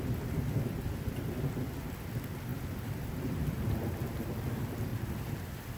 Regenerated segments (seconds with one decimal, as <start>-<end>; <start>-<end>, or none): 2.5-4.4; 4.9-5.8